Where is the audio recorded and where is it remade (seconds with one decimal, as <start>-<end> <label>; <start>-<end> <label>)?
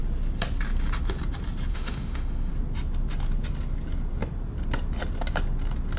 0.0-1.7 recorded; 1.7-2.5 remade; 2.5-6.0 recorded